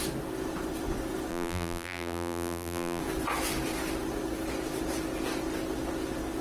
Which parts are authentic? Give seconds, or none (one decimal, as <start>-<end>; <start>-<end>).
0.0-1.3; 3.0-6.4